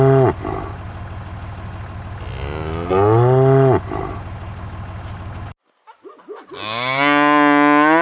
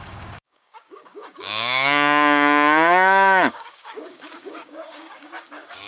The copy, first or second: second